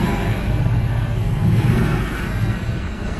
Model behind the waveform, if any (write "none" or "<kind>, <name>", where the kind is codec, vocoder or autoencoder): codec, SNAC